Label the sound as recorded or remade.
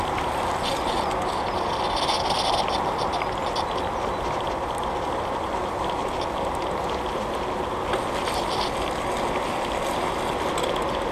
recorded